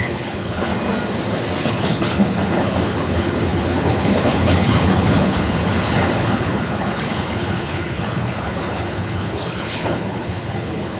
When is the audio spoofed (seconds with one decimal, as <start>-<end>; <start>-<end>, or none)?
0.0-0.7; 1.6-11.0